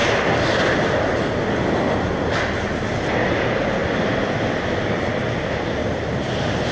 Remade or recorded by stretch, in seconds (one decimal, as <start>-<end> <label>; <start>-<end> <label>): 0.0-6.7 recorded